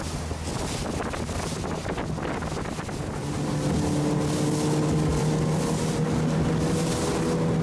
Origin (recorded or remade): recorded